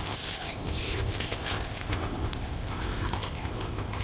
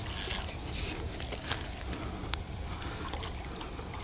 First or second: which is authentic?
second